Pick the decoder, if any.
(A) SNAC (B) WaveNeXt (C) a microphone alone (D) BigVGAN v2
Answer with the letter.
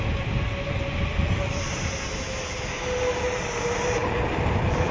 C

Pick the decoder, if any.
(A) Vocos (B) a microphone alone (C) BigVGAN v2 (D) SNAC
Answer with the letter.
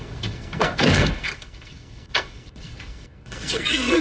D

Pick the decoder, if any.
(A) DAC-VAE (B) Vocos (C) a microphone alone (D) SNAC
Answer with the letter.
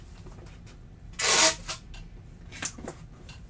C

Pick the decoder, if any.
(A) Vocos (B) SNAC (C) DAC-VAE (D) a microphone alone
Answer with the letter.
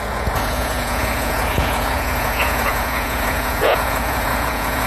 A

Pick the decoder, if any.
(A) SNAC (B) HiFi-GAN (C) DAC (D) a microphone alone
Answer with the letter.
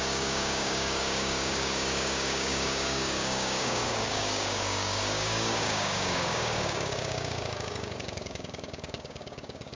C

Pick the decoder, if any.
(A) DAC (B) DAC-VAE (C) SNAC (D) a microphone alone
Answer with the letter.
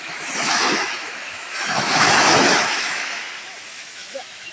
B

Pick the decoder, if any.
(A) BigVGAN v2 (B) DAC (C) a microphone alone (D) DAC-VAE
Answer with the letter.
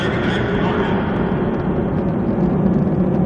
C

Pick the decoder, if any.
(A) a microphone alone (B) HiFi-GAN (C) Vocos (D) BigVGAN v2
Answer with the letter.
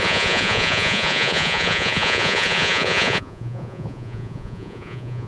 C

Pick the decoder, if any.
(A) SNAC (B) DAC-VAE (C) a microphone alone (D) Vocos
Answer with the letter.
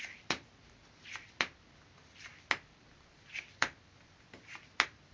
C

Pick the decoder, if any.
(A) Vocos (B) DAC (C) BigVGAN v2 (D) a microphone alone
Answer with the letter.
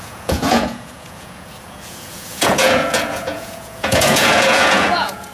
A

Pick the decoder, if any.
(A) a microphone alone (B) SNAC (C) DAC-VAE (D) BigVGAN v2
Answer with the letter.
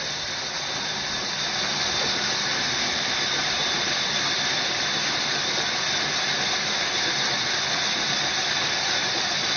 A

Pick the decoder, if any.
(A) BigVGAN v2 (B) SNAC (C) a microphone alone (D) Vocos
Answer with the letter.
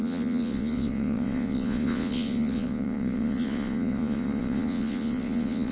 D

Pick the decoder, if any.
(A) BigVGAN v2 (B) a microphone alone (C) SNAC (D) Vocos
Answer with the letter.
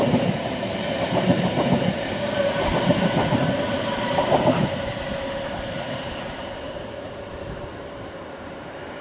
A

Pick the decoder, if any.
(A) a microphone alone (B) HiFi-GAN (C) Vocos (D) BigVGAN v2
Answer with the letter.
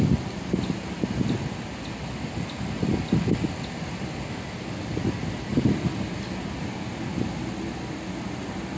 A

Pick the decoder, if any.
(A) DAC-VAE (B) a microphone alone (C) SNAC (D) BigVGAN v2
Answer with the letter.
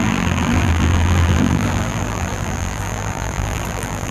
D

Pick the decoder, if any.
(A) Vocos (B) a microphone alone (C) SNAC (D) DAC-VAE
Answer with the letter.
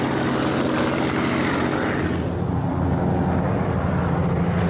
B